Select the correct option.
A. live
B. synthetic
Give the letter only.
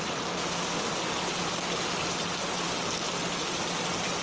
A